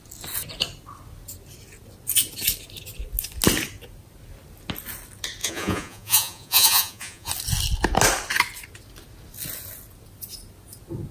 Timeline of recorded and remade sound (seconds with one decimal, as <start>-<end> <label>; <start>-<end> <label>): 0.0-5.4 recorded; 5.4-7.3 remade; 7.3-11.1 recorded

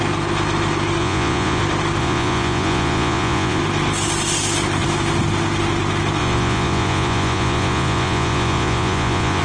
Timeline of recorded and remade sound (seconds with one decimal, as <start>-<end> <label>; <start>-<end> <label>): 0.0-1.0 recorded; 1.0-1.6 remade; 1.6-2.0 recorded; 2.0-3.6 remade; 3.6-6.2 recorded; 6.2-9.4 remade

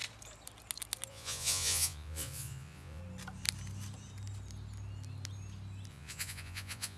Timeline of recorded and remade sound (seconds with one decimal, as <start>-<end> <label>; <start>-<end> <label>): 0.0-1.1 recorded; 1.1-3.0 remade; 3.0-5.9 recorded; 5.9-7.0 remade

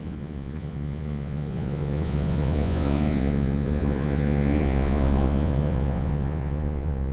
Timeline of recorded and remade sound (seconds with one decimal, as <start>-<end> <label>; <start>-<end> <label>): 0.0-7.1 remade

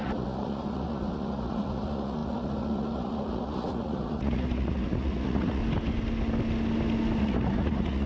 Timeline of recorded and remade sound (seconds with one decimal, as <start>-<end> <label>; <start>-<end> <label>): 0.0-5.6 remade; 5.6-7.2 recorded; 7.2-8.1 remade